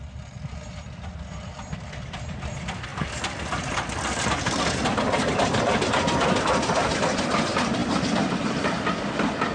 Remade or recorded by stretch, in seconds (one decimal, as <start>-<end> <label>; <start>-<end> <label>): 0.0-2.9 recorded; 2.9-3.7 remade; 3.7-9.5 recorded